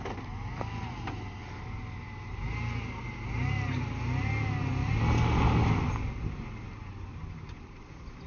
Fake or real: real